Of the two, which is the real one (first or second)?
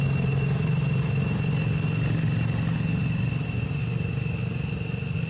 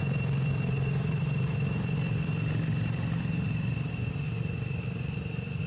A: first